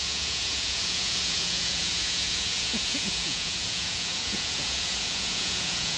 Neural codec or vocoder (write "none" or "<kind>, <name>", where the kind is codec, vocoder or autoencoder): vocoder, Vocos